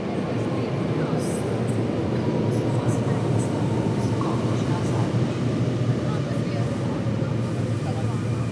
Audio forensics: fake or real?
real